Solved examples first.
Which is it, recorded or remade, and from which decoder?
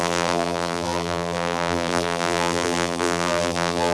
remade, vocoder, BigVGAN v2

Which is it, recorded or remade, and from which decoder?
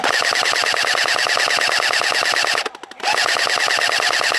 recorded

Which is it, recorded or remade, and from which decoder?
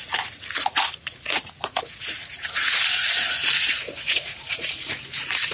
remade, vocoder, Vocos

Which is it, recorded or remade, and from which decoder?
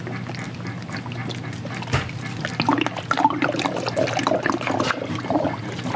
recorded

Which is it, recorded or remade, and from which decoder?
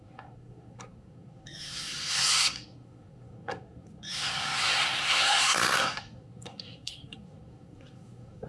remade, codec, SNAC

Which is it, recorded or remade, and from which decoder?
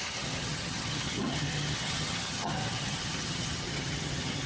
remade, vocoder, HiFi-GAN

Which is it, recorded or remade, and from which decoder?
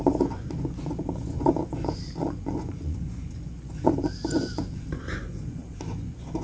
remade, vocoder, Vocos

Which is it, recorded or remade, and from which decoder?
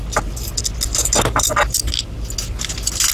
recorded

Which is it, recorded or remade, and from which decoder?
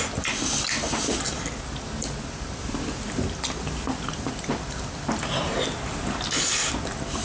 recorded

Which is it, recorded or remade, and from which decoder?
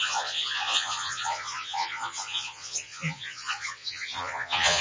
remade, vocoder, Vocos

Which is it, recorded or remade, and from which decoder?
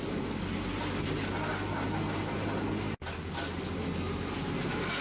recorded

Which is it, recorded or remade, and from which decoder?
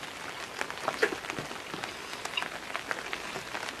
recorded